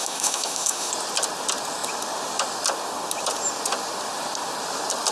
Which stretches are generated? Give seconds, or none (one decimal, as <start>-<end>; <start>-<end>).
0.0-0.9

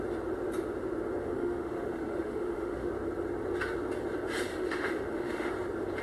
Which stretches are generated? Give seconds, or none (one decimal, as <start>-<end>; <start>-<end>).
1.2-2.9; 4.5-5.5

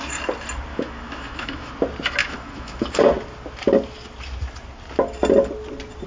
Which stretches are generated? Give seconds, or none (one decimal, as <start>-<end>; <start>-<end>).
0.7-1.7; 2.2-2.9

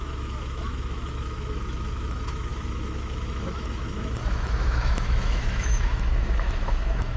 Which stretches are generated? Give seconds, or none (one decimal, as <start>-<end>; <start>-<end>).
0.0-7.2